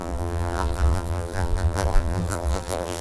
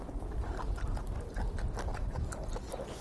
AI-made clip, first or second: first